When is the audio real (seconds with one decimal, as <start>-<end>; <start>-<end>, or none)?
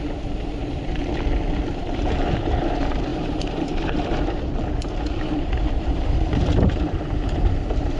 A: 1.0-1.8